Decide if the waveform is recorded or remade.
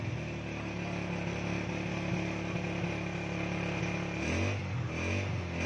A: recorded